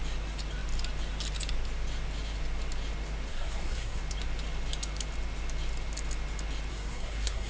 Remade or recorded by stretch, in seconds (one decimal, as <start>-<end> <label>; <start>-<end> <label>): 0.0-3.3 recorded; 3.3-4.0 remade; 4.0-6.7 recorded; 6.7-7.5 remade